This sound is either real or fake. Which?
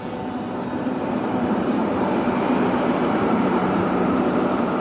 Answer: fake